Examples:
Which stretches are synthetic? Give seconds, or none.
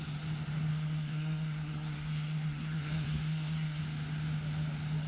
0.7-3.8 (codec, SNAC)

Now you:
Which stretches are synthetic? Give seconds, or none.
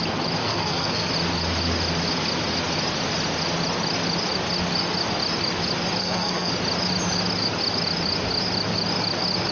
0.4-1.1 (codec, SNAC); 6.0-6.5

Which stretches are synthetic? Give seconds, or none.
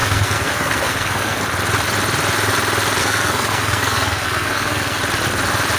0.0-1.4 (codec, SNAC); 3.0-5.0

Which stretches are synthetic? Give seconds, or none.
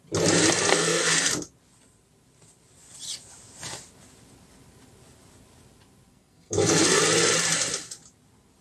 0.7-1.3 (codec, SNAC); 6.1-7.0